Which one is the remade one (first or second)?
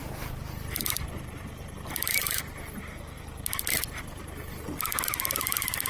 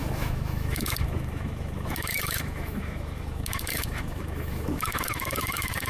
second